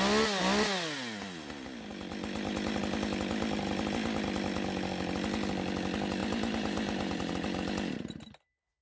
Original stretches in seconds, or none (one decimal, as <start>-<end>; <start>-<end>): 0.0-6.2; 7.3-8.8